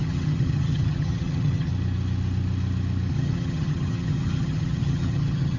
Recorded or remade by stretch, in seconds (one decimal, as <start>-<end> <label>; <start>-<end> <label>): 0.0-1.7 remade; 1.7-3.1 recorded; 3.1-5.6 remade